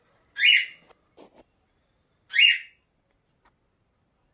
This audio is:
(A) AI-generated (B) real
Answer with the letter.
B